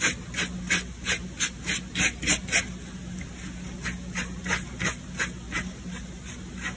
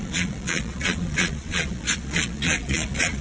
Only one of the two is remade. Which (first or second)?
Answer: second